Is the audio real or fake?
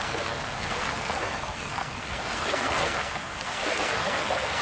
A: fake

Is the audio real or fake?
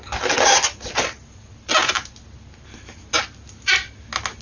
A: real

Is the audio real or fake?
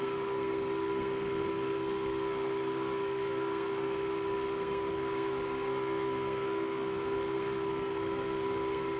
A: fake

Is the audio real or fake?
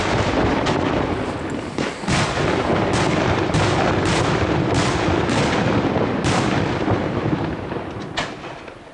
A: real